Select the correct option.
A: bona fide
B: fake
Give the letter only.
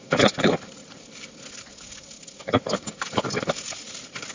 A